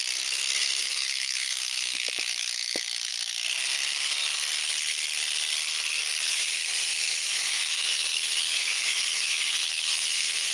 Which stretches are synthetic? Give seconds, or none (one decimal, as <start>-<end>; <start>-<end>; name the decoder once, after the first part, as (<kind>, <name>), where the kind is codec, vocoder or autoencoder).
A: 0.6-3.1 (autoencoder, DAC-VAE); 6.2-10.5